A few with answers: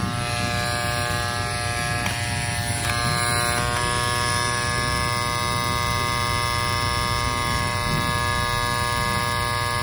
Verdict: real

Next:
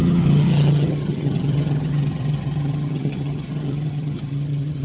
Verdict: fake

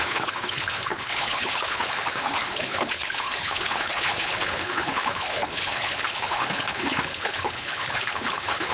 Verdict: fake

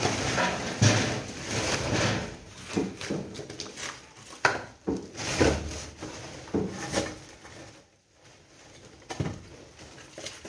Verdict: real